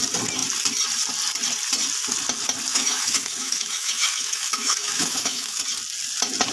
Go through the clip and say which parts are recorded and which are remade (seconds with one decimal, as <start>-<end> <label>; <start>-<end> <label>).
0.0-2.7 recorded; 2.7-5.6 remade; 5.6-6.5 recorded